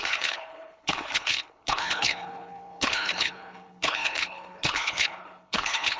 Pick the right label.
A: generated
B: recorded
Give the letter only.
A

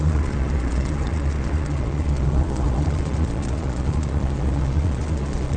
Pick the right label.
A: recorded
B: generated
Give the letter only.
B